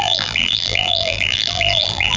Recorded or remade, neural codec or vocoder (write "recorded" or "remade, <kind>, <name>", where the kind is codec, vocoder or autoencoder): remade, vocoder, BigVGAN v2